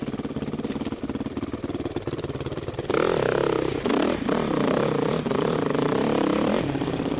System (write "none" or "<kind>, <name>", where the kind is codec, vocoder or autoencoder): vocoder, BigVGAN v2